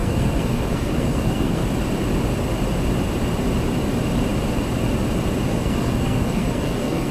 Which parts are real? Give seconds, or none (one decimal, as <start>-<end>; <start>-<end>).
1.6-5.5